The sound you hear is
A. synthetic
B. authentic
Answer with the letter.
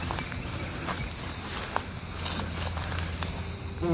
B